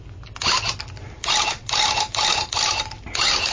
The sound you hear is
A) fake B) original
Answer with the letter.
B